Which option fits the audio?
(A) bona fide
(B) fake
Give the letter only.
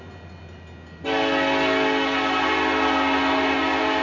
A